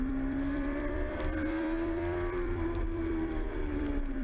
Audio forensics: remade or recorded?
remade